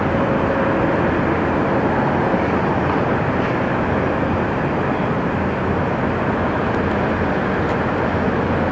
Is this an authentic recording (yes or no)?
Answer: yes